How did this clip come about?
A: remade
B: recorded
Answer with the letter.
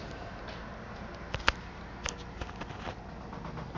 B